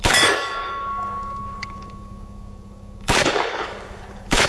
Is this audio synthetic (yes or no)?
yes